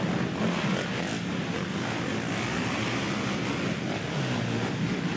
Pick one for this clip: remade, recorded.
recorded